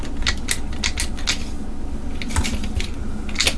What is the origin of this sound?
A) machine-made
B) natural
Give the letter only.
B